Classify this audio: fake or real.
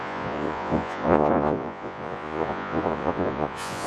fake